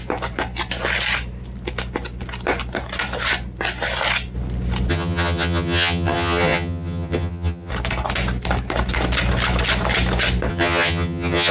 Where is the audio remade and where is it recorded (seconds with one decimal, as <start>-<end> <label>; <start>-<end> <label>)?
0.0-4.9 recorded; 4.9-7.7 remade; 7.7-10.5 recorded; 10.5-11.5 remade